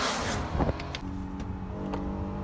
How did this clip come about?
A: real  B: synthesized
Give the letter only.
A